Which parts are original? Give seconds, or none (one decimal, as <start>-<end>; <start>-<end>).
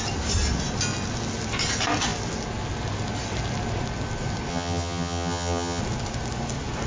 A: 0.0-4.5; 5.8-6.9